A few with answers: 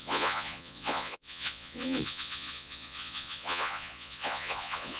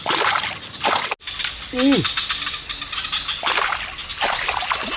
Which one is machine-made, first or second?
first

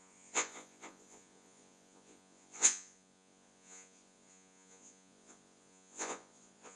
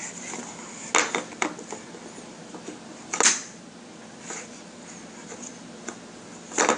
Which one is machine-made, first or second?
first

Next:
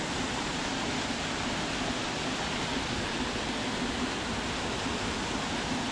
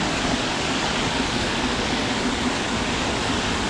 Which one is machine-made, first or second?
second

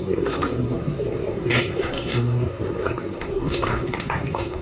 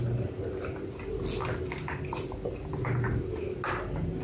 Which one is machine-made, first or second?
first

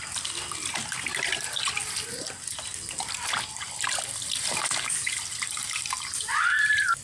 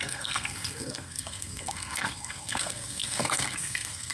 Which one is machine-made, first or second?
second